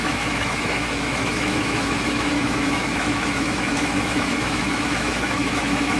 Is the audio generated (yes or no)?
yes